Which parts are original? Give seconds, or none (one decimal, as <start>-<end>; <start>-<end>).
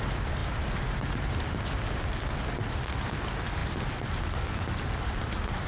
0.0-5.7